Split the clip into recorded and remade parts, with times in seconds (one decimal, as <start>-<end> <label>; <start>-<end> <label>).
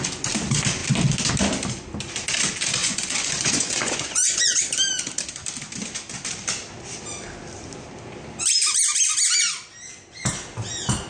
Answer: 0.0-2.8 recorded; 2.8-4.6 remade; 4.6-11.1 recorded